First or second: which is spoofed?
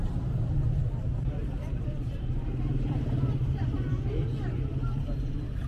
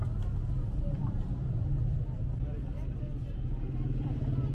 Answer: first